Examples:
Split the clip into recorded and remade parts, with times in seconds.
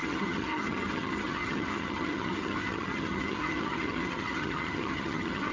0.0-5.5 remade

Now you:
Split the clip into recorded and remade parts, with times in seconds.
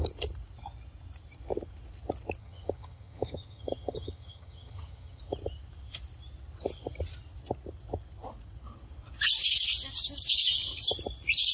0.0-2.4 recorded; 2.4-5.2 remade; 5.2-11.5 recorded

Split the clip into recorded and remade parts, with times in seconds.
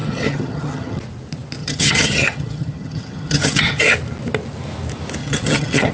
0.0-1.0 remade; 1.0-1.6 recorded; 1.6-3.8 remade; 3.8-5.2 recorded; 5.2-5.9 remade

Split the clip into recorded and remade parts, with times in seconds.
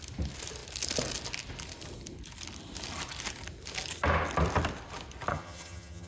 0.0-5.3 recorded; 5.3-6.1 remade